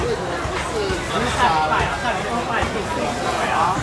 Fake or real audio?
real